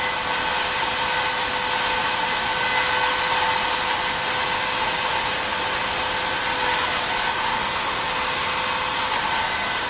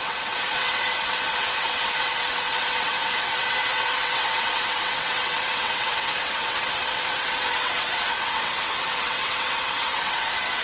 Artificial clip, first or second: second